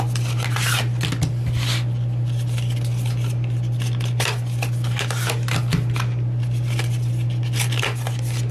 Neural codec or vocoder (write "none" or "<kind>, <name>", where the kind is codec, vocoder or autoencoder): none